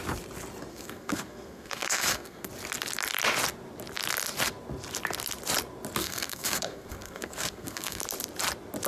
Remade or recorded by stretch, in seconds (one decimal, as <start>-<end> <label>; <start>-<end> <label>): 0.0-0.7 recorded; 0.7-2.5 remade; 2.5-6.0 recorded; 6.0-8.0 remade; 8.0-8.9 recorded